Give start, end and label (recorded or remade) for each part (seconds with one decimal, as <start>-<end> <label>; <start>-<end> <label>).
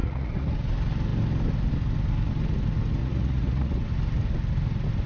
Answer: 0.0-0.5 remade; 0.5-3.0 recorded; 3.0-3.8 remade; 3.8-5.1 recorded